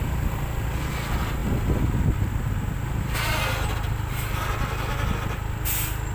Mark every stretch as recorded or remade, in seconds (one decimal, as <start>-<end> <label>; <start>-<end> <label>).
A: 0.0-6.1 recorded